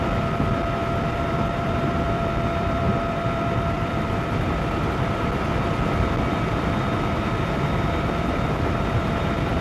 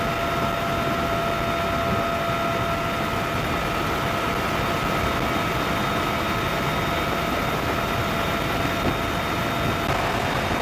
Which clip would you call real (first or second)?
second